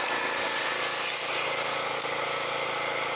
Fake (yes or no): no